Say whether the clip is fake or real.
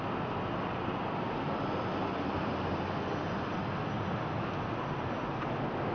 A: real